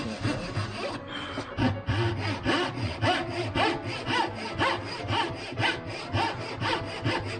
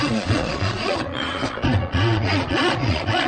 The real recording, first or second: first